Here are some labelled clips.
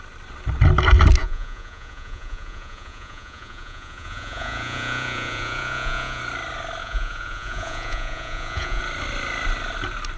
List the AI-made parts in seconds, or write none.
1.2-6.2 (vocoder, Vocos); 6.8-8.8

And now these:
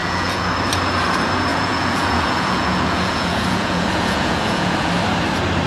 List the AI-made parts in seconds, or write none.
0.0-0.5 (vocoder, Vocos); 1.5-4.9

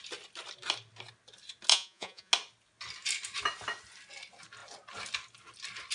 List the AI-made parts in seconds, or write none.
1.7-2.3 (vocoder, Vocos)

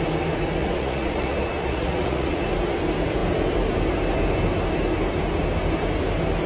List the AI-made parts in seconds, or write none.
0.6-2.4 (vocoder, Vocos)